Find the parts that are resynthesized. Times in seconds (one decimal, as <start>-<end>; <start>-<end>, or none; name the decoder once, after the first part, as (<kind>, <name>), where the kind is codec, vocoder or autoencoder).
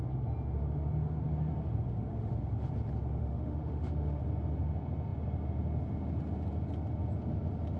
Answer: 2.1-2.7 (autoencoder, DAC-VAE); 3.2-4.2